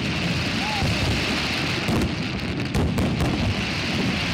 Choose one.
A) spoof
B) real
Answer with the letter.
B